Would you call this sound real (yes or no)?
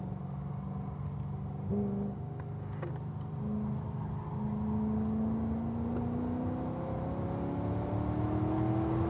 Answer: yes